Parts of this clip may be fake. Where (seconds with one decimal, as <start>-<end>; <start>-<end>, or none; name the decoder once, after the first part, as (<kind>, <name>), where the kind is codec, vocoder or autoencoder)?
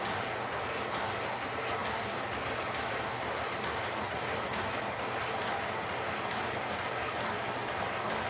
none